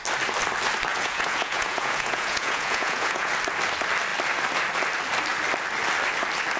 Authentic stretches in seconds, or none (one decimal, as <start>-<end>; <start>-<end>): 0.0-0.9; 3.3-6.6